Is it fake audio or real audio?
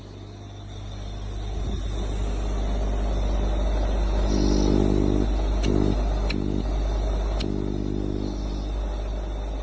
real